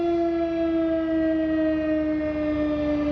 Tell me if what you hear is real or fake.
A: real